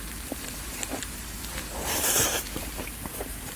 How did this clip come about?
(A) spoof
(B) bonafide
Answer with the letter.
A